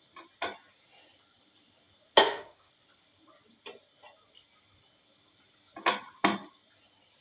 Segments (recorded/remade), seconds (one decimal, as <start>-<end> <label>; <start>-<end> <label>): 0.0-2.2 recorded; 2.2-2.7 remade; 2.7-7.2 recorded